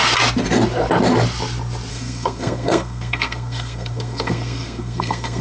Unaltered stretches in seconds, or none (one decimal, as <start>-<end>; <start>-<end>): 0.0-1.9